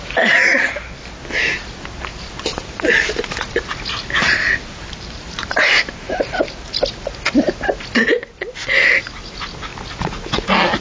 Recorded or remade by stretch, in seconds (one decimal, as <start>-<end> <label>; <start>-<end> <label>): 0.0-2.1 recorded; 2.1-6.7 remade; 6.7-10.8 recorded